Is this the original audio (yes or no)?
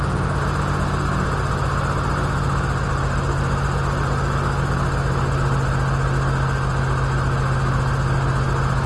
yes